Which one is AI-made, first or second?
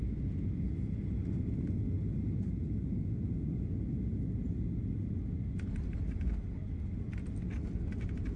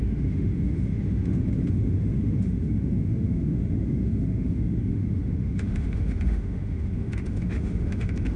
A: second